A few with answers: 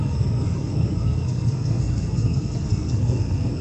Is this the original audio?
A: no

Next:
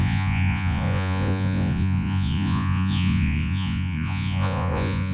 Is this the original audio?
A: no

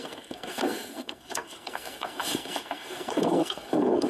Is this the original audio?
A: no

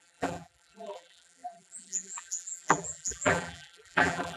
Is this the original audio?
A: no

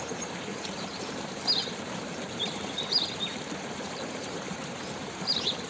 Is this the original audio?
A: no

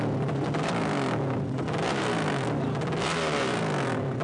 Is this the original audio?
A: yes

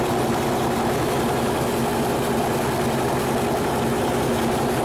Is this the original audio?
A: yes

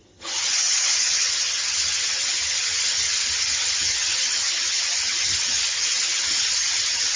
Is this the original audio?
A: no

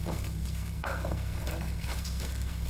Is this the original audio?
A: no